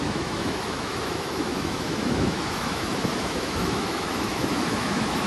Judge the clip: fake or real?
fake